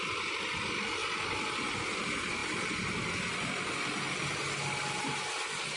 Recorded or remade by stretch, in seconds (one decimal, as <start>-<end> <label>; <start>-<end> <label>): 0.0-5.8 recorded